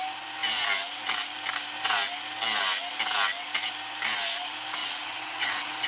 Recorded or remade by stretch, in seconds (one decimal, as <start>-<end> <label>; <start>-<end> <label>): 0.0-4.8 recorded; 4.8-5.9 remade

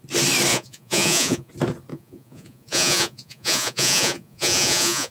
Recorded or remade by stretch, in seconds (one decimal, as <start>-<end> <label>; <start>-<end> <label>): 0.0-0.5 recorded; 0.5-1.5 remade; 1.5-1.9 recorded; 1.9-5.1 remade

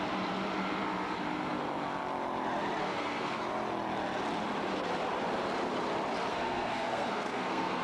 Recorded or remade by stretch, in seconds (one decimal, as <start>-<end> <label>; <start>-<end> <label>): 0.0-2.8 recorded; 2.8-3.4 remade; 3.4-6.3 recorded; 6.3-7.8 remade

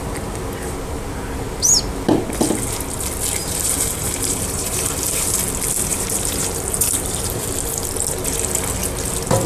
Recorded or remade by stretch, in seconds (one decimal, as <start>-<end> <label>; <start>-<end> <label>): 0.0-3.4 recorded; 3.4-5.4 remade; 5.4-5.9 recorded; 5.9-7.5 remade; 7.5-9.5 recorded

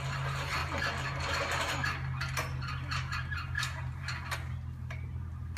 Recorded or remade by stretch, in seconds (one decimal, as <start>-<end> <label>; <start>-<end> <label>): 0.0-5.6 recorded